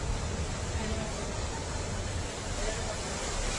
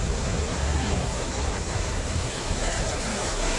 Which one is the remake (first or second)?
second